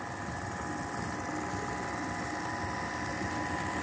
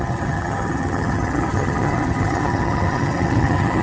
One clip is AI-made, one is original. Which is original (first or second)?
first